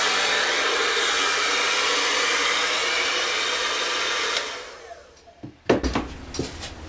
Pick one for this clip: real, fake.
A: real